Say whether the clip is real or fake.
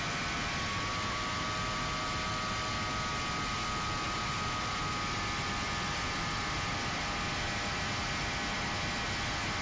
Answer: real